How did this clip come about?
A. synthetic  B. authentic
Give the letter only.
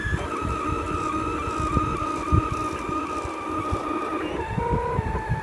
B